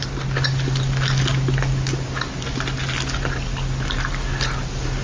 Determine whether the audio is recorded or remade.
recorded